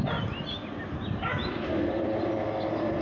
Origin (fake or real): real